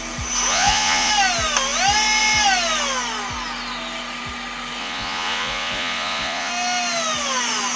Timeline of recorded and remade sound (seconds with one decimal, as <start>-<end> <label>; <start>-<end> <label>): 0.0-0.5 recorded; 0.5-1.1 remade; 1.1-4.8 recorded; 4.8-6.5 remade; 6.5-7.8 recorded